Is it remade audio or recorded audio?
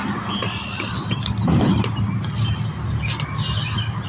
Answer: recorded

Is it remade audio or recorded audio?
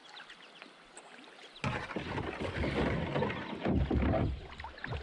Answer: recorded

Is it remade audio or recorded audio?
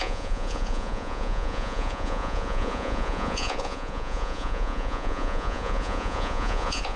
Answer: remade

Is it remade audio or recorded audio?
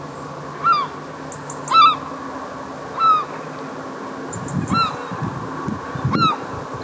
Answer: recorded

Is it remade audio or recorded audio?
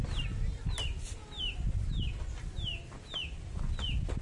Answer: recorded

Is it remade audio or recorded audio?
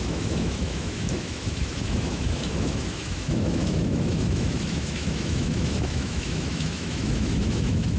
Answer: remade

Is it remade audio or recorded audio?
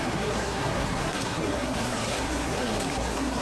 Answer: remade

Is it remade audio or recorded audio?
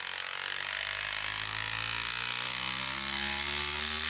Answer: recorded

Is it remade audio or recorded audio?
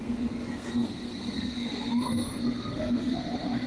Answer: remade